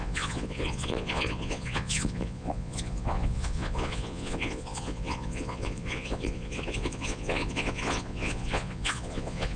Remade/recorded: remade